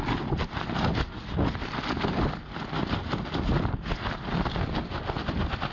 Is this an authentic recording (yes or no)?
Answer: yes